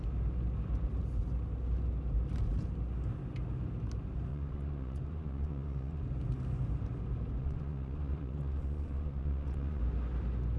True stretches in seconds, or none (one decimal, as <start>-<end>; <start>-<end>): 0.0-4.3; 6.0-7.4; 9.8-10.6